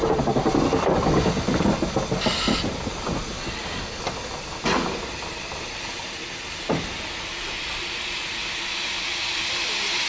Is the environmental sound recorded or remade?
recorded